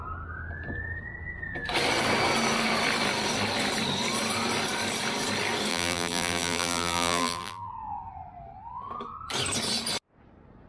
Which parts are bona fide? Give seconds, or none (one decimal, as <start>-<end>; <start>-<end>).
0.0-5.7; 7.7-10.7